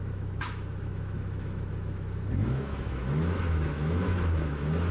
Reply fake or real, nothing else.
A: fake